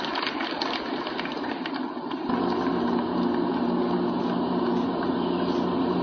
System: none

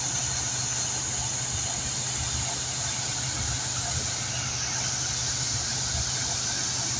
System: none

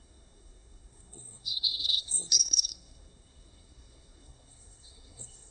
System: codec, SNAC